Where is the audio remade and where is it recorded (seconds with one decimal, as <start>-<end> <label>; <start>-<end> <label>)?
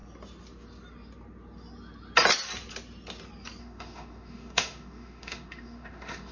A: 0.0-3.6 recorded; 3.6-6.3 remade